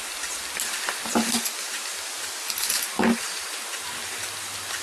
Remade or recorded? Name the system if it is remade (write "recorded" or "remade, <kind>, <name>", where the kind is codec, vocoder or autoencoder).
recorded